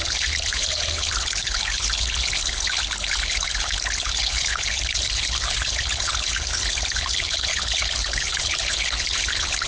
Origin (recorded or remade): remade